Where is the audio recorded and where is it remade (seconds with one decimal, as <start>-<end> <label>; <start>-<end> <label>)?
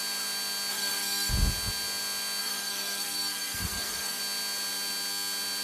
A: 0.0-0.7 recorded; 0.7-1.3 remade; 1.3-2.4 recorded; 2.4-4.2 remade; 4.2-5.6 recorded